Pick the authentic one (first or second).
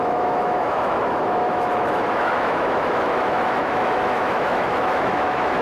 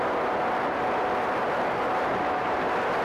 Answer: second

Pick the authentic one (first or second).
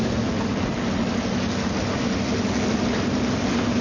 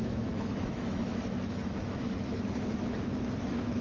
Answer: first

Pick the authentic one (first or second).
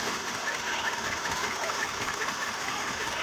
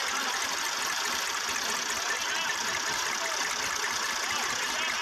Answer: second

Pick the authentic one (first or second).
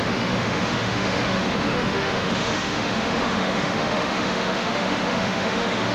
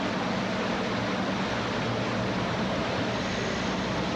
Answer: second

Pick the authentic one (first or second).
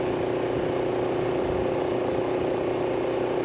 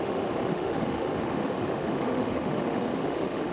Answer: first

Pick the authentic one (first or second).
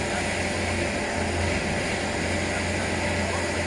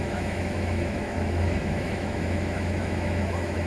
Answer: first